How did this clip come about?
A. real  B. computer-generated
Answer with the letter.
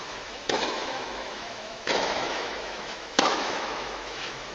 B